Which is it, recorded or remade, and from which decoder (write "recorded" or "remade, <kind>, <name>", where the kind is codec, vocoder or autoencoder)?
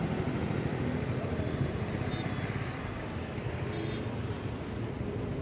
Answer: recorded